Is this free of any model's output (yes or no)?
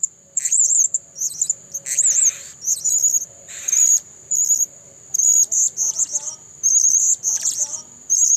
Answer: no